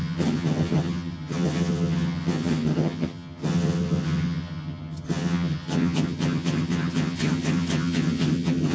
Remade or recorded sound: remade